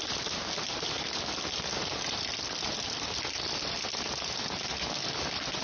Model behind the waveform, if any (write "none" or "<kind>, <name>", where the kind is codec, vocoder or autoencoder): none